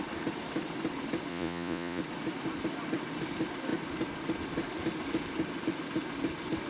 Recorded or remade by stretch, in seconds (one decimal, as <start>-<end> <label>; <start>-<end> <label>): 0.0-1.3 recorded; 1.3-2.0 remade; 2.0-6.7 recorded